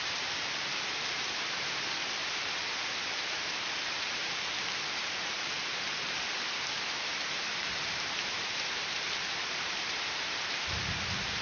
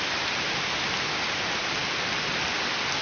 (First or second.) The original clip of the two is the second